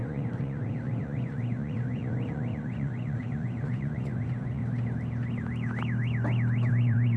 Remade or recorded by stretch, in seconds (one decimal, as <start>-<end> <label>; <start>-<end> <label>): 0.0-4.6 remade; 4.6-6.7 recorded; 6.7-7.2 remade